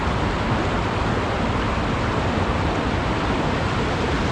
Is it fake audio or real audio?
real